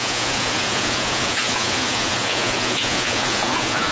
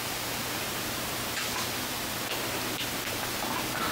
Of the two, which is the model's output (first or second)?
first